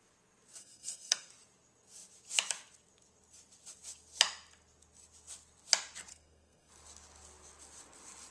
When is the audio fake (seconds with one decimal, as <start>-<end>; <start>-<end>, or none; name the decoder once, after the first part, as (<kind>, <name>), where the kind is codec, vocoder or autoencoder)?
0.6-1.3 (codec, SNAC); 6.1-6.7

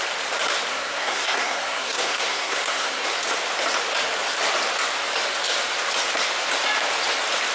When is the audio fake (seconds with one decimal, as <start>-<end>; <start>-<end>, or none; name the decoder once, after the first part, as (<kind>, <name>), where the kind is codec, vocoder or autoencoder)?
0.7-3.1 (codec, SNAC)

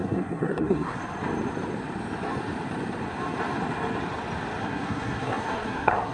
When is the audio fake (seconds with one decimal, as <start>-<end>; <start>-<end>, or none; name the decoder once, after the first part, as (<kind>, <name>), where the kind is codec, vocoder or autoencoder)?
0.0-1.0 (codec, SNAC); 4.6-6.1